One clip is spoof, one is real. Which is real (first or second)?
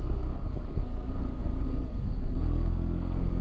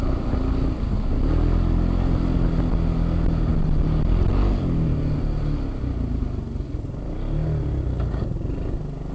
second